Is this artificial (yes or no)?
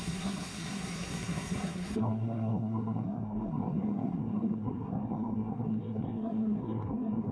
yes